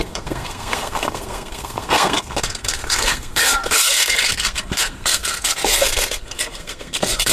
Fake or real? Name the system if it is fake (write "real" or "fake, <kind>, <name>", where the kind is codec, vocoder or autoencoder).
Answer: fake, codec, SNAC